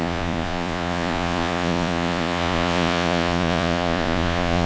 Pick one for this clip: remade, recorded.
remade